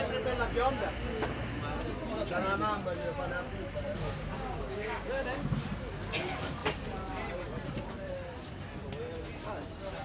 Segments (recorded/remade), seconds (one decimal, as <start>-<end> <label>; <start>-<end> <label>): 0.0-4.3 recorded; 4.3-5.3 remade; 5.3-10.0 recorded